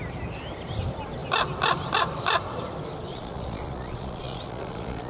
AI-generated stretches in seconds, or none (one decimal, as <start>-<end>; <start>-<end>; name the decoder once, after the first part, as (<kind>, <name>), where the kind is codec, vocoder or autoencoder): 3.1-5.1 (vocoder, Vocos)